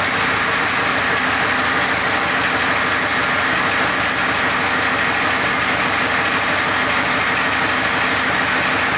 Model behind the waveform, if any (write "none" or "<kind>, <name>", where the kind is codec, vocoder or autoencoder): none